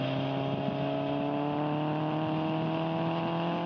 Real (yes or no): yes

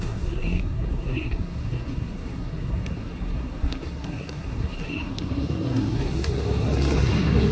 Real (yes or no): no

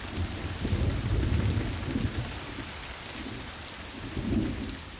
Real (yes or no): yes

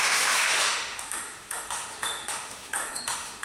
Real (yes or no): no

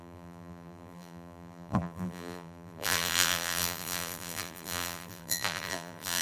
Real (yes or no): no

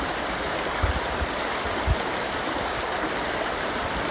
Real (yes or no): yes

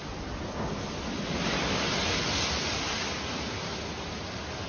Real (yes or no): yes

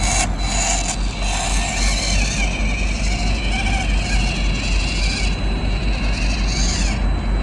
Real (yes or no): yes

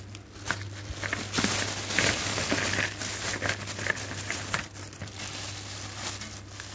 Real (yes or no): yes